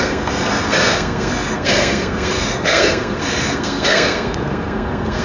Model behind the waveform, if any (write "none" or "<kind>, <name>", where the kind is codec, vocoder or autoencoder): codec, SNAC